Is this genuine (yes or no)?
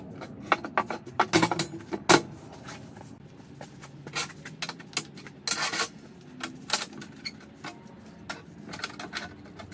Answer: yes